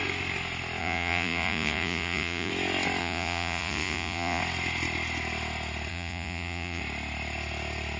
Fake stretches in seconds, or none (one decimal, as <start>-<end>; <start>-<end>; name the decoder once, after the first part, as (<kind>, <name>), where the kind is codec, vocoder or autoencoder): 0.8-2.5 (vocoder, Vocos); 3.0-4.4; 5.9-6.8